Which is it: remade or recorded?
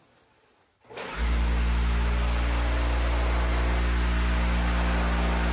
recorded